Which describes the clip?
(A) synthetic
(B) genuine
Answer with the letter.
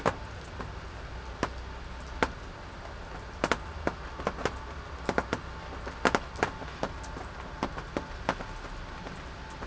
B